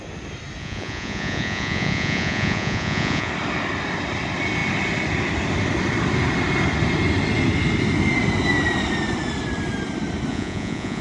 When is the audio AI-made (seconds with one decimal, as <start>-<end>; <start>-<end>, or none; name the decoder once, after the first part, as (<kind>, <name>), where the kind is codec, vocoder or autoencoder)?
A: 0.6-3.3 (vocoder, Vocos); 10.3-11.0